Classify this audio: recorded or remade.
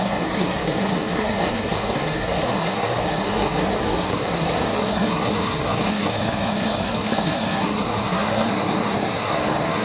remade